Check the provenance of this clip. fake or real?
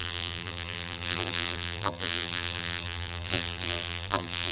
fake